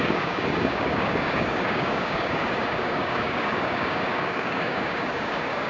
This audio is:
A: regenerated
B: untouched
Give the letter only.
A